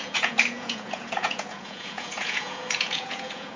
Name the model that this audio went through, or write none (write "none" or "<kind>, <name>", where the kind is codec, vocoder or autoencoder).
vocoder, Vocos